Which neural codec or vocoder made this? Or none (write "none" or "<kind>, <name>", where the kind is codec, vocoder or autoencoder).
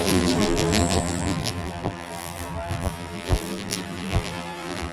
vocoder, BigVGAN v2